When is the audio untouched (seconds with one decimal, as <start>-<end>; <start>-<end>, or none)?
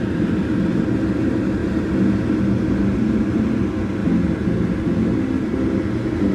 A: 0.0-1.6; 2.3-6.3